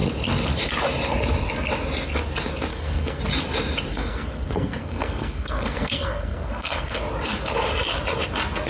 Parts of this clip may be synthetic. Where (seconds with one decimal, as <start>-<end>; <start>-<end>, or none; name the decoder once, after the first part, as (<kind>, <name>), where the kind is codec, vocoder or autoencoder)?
2.7-3.2 (codec, SNAC); 3.9-7.0